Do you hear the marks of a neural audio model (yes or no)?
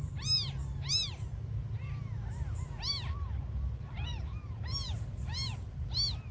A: no